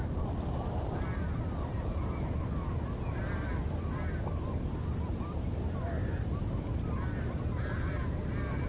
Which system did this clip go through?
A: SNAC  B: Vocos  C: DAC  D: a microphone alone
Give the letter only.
D